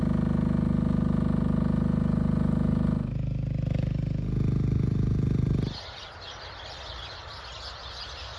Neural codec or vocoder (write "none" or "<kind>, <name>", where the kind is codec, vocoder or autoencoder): none